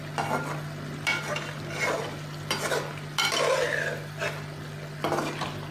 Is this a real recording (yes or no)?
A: yes